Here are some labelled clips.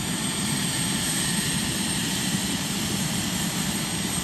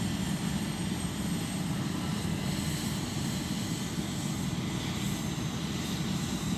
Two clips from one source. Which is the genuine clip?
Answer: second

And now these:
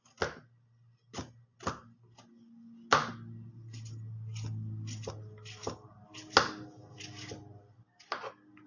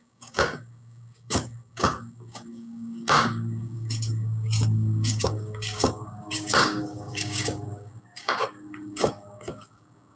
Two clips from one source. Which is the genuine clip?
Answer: first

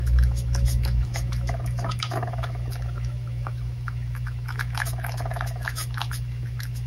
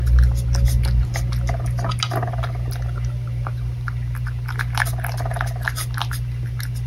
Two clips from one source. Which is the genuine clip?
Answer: second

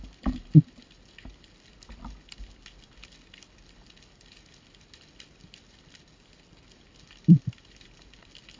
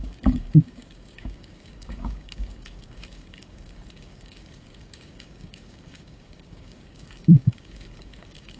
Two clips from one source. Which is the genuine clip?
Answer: first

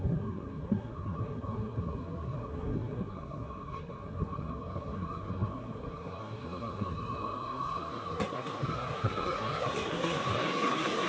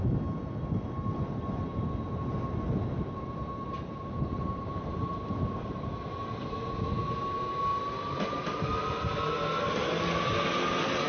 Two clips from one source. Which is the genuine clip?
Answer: second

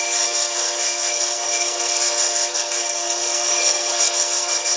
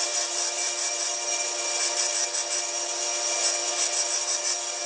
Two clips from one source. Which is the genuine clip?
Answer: second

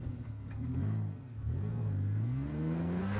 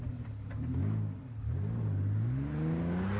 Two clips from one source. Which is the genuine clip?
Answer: second